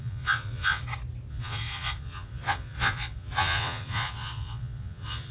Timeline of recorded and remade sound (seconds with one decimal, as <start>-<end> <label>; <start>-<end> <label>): 0.0-0.8 remade; 0.8-1.3 recorded; 1.3-5.3 remade